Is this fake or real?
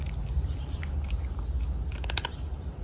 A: real